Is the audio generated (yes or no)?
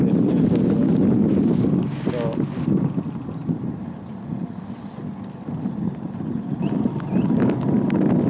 no